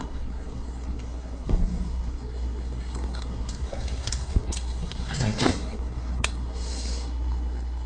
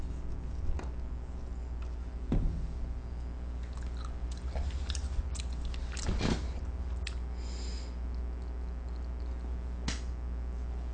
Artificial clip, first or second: first